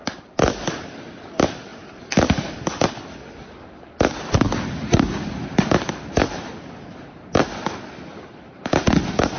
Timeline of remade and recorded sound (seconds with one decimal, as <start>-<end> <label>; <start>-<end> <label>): 0.0-9.4 remade